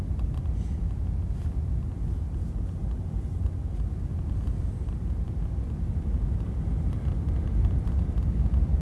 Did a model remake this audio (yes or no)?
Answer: no